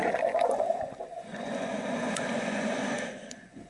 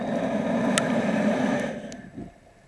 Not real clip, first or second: first